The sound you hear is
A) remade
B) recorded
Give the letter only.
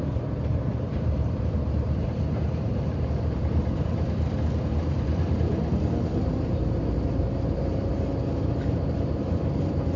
A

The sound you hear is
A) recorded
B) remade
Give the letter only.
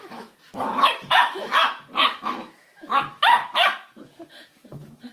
B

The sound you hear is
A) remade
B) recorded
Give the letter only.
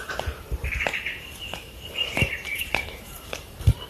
A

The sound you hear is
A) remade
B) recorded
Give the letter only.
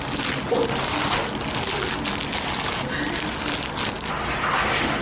B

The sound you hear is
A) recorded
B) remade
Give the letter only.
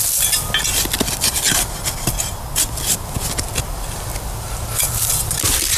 A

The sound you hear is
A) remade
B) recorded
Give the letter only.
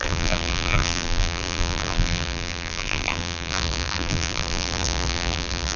A